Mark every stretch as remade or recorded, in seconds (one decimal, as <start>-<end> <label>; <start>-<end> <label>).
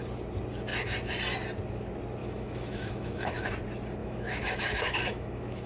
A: 0.0-2.2 recorded; 2.2-3.5 remade; 3.5-4.0 recorded; 4.0-5.7 remade